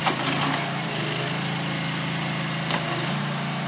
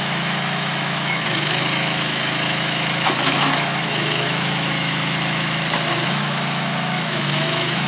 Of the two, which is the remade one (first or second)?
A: second